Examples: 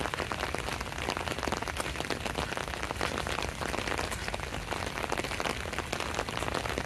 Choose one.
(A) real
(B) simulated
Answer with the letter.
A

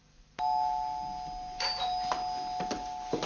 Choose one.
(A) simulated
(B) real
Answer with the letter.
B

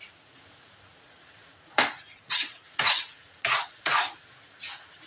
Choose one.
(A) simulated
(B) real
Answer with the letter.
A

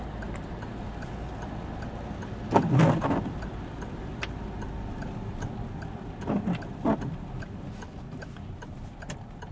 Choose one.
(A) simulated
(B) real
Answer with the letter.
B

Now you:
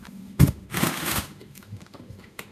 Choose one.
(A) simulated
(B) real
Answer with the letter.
A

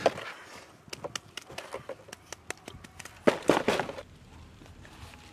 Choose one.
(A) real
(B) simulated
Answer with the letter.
A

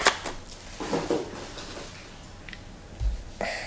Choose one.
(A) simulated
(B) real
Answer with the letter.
B